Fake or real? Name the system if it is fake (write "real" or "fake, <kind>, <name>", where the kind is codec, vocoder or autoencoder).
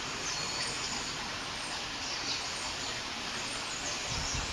real